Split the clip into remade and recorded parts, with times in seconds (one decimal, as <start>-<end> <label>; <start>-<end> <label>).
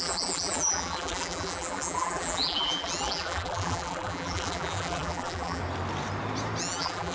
0.0-5.6 remade; 5.6-6.6 recorded; 6.6-7.1 remade